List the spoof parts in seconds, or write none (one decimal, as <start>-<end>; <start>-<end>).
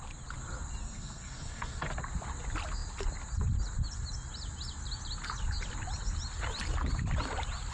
0.8-1.8